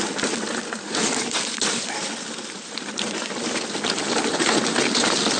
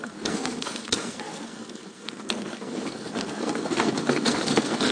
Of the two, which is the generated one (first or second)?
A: second